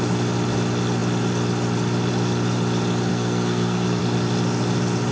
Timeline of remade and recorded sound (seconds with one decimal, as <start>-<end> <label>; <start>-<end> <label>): 0.0-3.1 recorded; 3.1-4.0 remade; 4.0-5.1 recorded